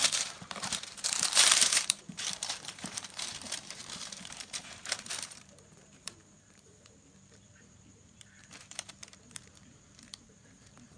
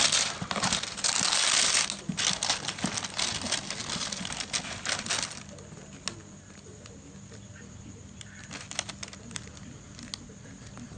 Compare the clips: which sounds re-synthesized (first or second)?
first